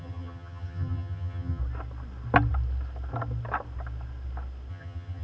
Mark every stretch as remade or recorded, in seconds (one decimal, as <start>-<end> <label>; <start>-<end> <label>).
0.0-1.6 remade; 1.6-4.7 recorded; 4.7-5.2 remade